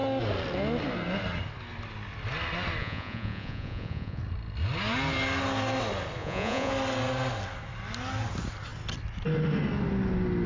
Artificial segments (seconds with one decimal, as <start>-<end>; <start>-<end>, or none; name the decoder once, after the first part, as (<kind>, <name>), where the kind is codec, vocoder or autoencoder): 2.8-4.2 (vocoder, Vocos); 6.2-6.7

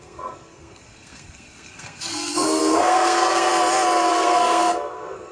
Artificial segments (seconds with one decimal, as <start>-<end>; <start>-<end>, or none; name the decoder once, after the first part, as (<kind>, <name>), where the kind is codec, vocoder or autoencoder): 0.0-3.5 (codec, SNAC); 4.1-5.3

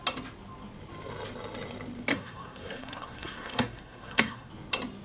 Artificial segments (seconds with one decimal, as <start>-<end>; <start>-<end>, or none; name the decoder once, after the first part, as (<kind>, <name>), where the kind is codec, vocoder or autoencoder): 2.1-4.5 (codec, SNAC)

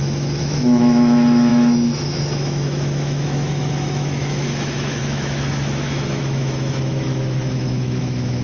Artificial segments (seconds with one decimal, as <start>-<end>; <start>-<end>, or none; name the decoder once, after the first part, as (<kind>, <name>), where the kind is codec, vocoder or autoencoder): 0.0-8.4 (autoencoder, DAC-VAE)

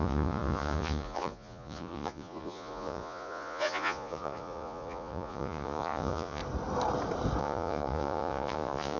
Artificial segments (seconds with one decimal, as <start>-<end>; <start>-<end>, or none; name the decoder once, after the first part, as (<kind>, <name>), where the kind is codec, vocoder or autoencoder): 0.0-6.4 (vocoder, Vocos); 7.4-9.0

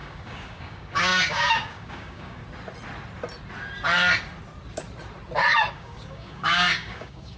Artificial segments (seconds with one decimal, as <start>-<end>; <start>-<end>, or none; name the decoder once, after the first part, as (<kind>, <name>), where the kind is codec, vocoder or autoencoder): 0.0-2.4 (codec, DAC); 5.7-7.4

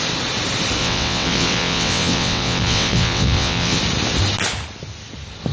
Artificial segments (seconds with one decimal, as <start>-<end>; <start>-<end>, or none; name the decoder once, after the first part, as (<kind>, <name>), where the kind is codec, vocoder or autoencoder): 0.8-3.8 (vocoder, WaveNeXt)

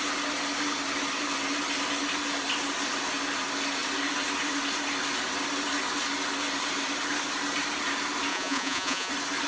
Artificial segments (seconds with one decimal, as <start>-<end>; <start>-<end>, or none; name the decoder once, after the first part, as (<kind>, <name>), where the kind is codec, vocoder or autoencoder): 8.3-9.1 (vocoder, Vocos)